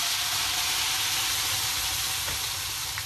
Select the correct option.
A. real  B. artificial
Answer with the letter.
A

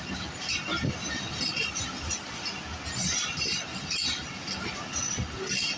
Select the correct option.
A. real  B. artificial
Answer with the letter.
A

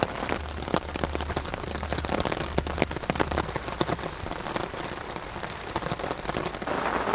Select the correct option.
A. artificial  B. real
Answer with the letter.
B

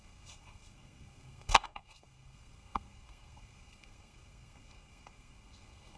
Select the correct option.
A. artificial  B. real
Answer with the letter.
A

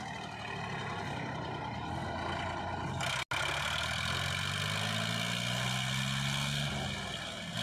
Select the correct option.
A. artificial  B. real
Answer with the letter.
B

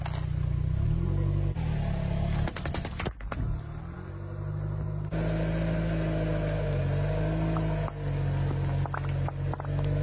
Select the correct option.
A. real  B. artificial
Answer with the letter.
A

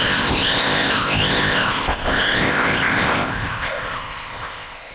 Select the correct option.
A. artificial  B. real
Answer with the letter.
A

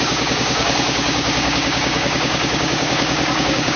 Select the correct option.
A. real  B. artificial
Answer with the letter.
B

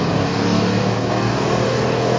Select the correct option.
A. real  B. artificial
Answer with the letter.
B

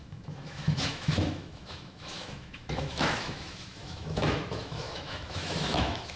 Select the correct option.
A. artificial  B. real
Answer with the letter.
A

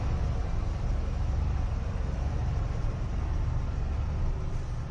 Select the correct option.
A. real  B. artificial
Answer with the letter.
B